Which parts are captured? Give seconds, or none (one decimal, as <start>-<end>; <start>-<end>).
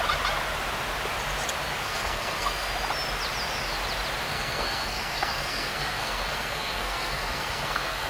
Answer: 0.0-1.8; 2.7-4.3